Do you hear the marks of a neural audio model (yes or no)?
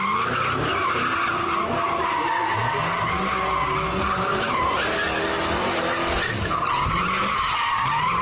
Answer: no